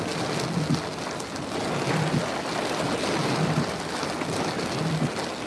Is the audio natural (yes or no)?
yes